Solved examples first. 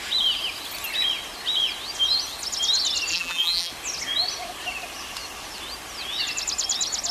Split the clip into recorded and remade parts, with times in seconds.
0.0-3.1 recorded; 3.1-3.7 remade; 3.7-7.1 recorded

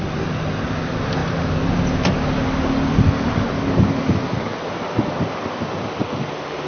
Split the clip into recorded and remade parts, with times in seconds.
0.0-6.7 recorded